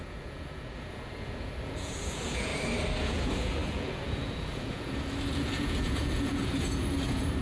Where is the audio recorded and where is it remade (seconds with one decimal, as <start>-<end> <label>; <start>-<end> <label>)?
0.0-2.5 remade; 2.5-3.0 recorded; 3.0-7.4 remade

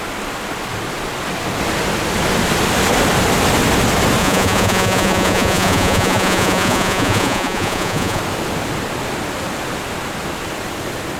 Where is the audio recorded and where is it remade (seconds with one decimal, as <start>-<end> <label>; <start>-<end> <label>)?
0.0-4.2 recorded; 4.2-8.2 remade; 8.2-11.2 recorded

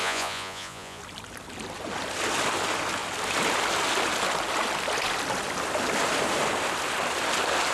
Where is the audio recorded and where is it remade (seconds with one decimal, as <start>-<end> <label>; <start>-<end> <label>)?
0.0-1.0 remade; 1.0-7.7 recorded

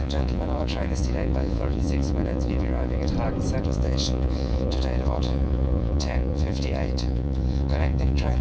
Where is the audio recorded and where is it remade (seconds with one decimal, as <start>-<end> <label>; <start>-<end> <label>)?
0.0-3.1 remade; 3.1-3.6 recorded; 3.6-8.4 remade

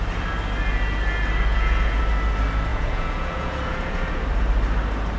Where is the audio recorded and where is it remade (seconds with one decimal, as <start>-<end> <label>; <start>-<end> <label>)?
0.0-1.5 recorded; 1.5-2.0 remade; 2.0-2.7 recorded; 2.7-4.2 remade; 4.2-5.2 recorded

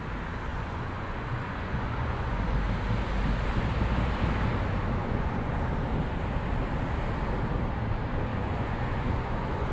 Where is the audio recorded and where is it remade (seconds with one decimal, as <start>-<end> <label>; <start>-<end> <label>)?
0.0-0.5 recorded; 0.5-2.6 remade; 2.6-5.0 recorded; 5.0-5.6 remade; 5.6-8.3 recorded; 8.3-9.7 remade

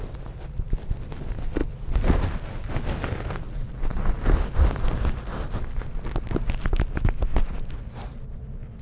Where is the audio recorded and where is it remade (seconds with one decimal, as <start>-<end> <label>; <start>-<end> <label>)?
0.0-8.8 recorded

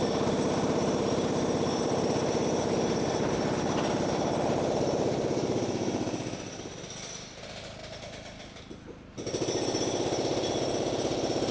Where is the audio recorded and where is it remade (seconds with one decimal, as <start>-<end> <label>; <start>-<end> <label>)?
0.0-11.5 recorded